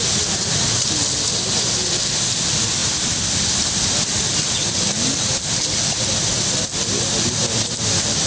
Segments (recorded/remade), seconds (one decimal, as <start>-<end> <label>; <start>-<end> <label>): 0.0-8.3 recorded

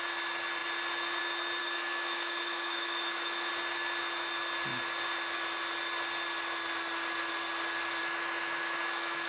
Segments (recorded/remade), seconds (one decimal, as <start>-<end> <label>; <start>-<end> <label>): 0.0-1.6 recorded; 1.6-3.5 remade; 3.5-8.0 recorded; 8.0-9.3 remade

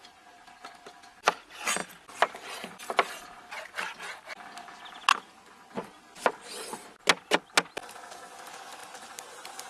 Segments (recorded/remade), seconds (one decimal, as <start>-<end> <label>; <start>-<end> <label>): 0.0-8.8 recorded; 8.8-9.7 remade

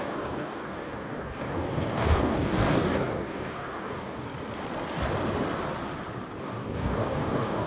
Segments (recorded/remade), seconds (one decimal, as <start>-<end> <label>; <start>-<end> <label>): 0.0-4.3 remade; 4.3-6.4 recorded; 6.4-7.7 remade

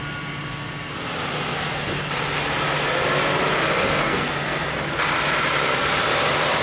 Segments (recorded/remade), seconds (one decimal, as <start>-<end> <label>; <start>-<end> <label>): 0.0-4.0 recorded; 4.0-4.7 remade; 4.7-6.6 recorded

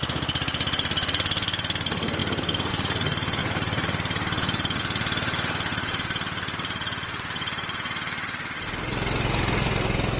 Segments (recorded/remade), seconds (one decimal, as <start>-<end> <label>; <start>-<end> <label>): 0.0-3.4 recorded; 3.4-4.8 remade; 4.8-5.7 recorded; 5.7-10.2 remade